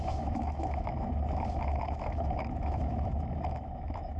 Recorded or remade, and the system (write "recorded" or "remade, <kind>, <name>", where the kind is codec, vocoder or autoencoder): remade, autoencoder, DAC-VAE